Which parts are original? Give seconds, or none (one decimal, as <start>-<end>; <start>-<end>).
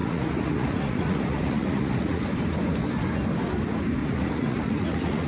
2.2-4.0